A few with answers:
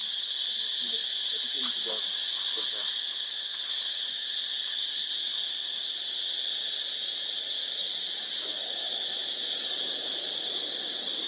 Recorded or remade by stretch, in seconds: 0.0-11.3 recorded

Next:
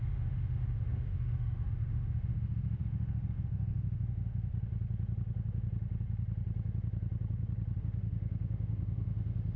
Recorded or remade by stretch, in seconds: 0.0-4.5 remade; 4.5-7.8 recorded; 7.8-9.6 remade

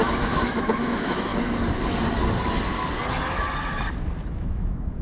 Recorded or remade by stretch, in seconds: 0.0-1.3 remade; 1.3-4.3 recorded; 4.3-5.0 remade